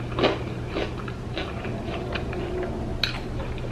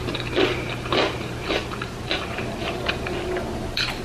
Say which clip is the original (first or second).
first